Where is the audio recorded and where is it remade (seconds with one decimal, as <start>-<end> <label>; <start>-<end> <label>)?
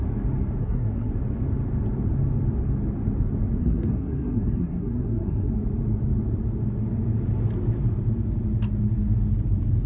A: 0.0-0.6 recorded; 0.6-1.1 remade; 1.1-3.6 recorded; 3.6-5.5 remade; 5.5-9.9 recorded